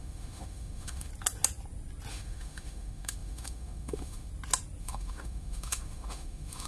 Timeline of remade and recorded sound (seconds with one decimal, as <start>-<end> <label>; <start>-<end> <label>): 0.0-1.1 remade; 1.1-2.1 recorded; 2.1-4.3 remade; 4.3-4.8 recorded; 4.8-6.7 remade